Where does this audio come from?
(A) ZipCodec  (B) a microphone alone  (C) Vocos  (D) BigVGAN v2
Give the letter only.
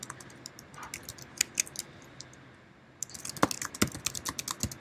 B